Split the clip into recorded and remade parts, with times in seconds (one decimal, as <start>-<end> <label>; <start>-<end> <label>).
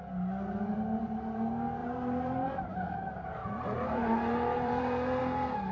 0.0-1.8 recorded; 1.8-5.2 remade; 5.2-5.7 recorded